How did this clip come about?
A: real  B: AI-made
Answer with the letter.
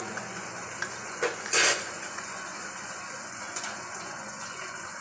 B